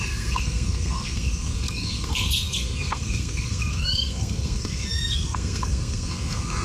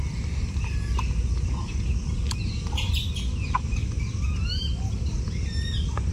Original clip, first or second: second